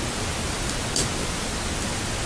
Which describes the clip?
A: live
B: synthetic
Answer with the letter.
A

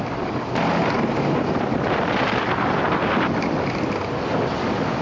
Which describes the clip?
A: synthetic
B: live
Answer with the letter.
B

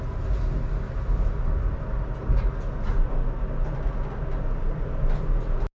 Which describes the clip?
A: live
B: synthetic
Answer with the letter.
A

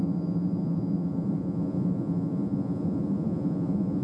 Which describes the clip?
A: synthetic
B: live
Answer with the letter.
A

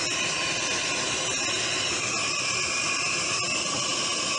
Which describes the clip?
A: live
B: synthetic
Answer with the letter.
A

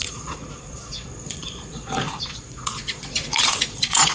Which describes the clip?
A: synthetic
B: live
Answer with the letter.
A